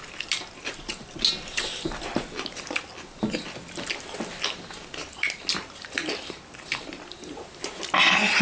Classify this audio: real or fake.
real